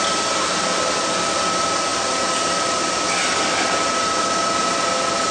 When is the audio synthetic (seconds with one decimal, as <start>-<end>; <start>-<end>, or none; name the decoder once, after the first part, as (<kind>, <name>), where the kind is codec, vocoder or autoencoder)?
none